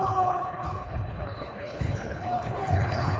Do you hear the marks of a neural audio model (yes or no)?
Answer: yes